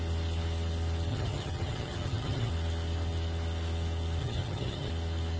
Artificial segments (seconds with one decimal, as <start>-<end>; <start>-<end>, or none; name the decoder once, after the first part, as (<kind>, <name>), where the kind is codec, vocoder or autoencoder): 1.1-2.5 (vocoder, HiFi-GAN); 4.2-4.9

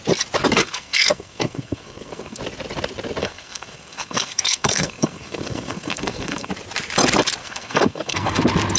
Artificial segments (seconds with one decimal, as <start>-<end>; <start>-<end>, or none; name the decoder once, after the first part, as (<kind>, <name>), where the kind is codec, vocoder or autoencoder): 0.6-2.4 (codec, SNAC); 3.2-6.5; 7.4-8.4

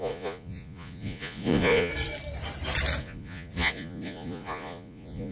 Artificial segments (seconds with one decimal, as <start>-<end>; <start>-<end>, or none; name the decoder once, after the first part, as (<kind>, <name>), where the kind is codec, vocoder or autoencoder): 0.0-1.9 (vocoder, Vocos); 3.0-5.3

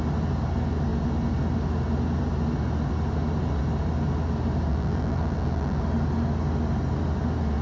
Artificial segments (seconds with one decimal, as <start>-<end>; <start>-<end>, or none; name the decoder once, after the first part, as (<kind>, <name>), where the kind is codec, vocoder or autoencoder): 4.7-5.8 (vocoder, BigVGAN v2)

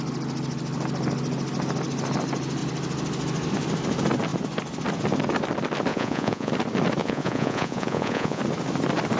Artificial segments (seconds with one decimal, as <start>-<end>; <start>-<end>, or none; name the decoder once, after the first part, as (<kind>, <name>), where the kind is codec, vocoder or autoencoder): 5.9-6.5 (vocoder, Vocos); 7.0-8.4